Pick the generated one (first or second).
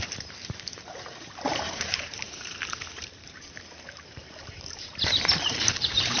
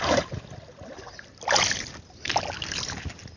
first